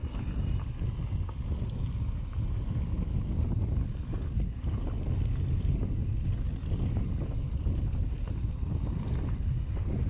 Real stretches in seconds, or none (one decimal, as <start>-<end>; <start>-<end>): 0.0-10.1